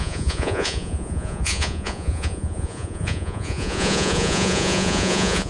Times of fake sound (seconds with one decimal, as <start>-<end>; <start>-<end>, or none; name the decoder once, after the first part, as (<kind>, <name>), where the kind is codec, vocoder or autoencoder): 0.0-5.5 (vocoder, Vocos)